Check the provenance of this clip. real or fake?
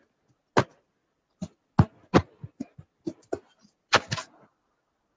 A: real